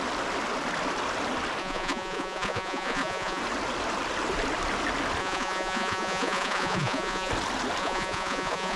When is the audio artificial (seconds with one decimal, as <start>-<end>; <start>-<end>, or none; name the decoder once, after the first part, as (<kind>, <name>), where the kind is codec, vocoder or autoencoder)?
1.6-3.4 (vocoder, Vocos); 5.2-7.3; 7.8-8.8

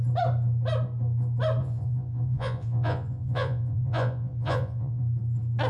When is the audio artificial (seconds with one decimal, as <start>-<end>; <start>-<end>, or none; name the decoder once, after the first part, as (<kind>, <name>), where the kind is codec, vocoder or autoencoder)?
1.6-5.0 (vocoder, Vocos)

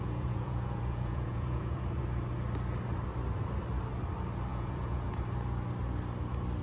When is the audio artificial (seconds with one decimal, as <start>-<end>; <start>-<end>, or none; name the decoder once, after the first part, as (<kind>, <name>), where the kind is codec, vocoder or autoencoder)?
0.0-2.0 (vocoder, Vocos); 4.5-5.2

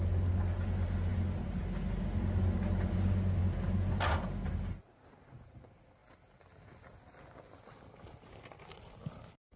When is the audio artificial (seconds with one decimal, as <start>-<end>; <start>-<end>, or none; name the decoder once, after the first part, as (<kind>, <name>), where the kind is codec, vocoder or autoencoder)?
none

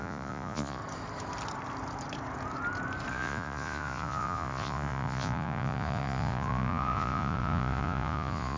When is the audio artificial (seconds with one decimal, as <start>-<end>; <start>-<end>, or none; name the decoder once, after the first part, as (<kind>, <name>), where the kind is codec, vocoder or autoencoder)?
0.0-0.8 (vocoder, Vocos); 3.1-8.6